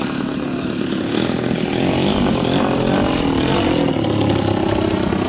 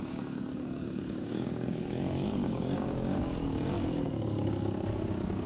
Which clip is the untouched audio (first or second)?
first